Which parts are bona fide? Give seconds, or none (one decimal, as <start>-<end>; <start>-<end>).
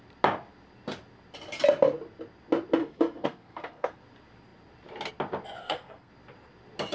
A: 0.0-2.8; 4.0-5.6; 6.1-6.9